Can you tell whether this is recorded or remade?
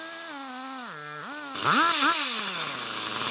recorded